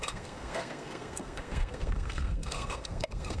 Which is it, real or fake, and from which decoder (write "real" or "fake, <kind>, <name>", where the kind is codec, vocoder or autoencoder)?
fake, codec, SNAC